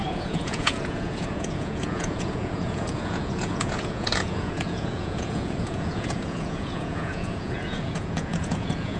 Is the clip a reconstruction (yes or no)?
yes